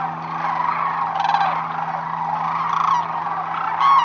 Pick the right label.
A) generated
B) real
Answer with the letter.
B